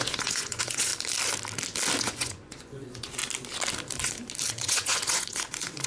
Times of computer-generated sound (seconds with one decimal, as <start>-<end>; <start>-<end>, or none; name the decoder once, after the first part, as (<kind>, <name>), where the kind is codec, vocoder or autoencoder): 0.0-0.9 (vocoder, Vocos); 2.0-3.2; 4.5-5.9